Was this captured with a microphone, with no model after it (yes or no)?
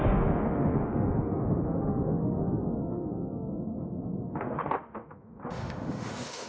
no